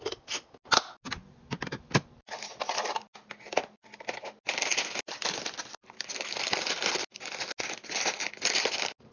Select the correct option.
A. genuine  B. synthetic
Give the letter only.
A